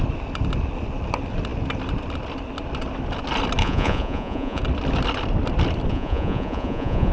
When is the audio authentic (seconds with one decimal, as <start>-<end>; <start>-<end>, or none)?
0.0-3.6; 4.6-5.9